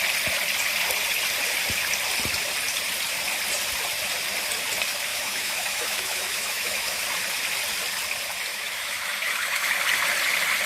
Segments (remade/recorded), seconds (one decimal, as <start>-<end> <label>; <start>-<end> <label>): 0.0-5.1 recorded; 5.1-7.0 remade; 7.0-8.5 recorded; 8.5-9.7 remade; 9.7-10.7 recorded